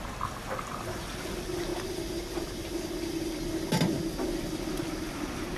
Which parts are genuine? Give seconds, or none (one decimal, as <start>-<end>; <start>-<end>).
0.0-5.6